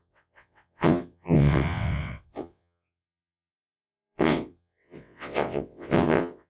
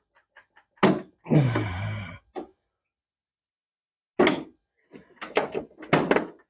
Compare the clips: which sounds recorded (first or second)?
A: second